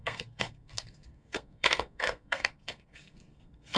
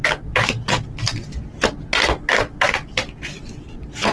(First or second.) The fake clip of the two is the first